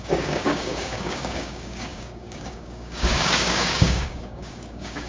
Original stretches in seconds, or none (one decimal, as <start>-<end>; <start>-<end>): none